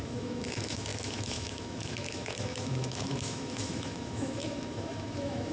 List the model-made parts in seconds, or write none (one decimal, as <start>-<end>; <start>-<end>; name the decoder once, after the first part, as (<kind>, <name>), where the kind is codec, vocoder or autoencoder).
0.0-5.5 (autoencoder, DAC-VAE)